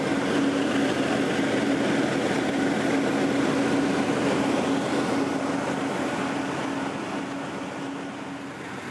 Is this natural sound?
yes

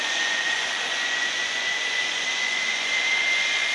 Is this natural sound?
no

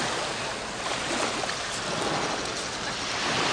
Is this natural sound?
yes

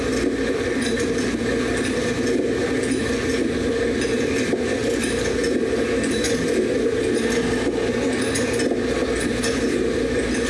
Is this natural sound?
yes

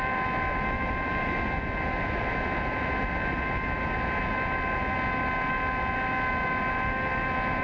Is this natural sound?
yes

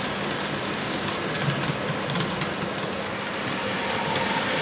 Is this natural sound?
yes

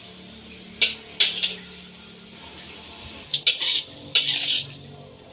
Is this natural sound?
yes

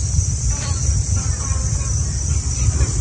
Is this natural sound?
yes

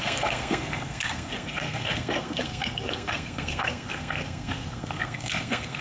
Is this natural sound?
no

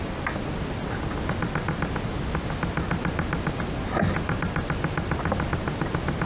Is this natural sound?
yes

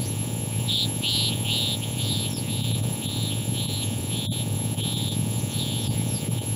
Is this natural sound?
no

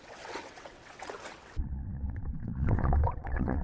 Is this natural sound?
no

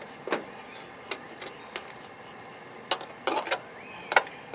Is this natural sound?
yes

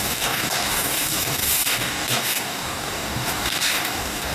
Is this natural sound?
no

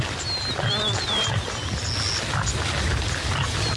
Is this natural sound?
yes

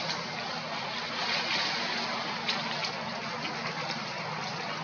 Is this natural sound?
yes